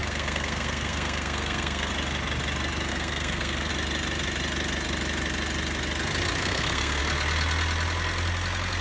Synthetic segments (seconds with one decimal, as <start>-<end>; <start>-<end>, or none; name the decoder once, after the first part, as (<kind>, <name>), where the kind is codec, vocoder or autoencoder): 0.0-1.9 (codec, SNAC); 2.9-3.7; 6.4-7.0